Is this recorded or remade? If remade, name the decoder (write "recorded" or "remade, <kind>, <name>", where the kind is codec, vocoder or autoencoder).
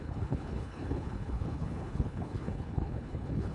remade, codec, HILCodec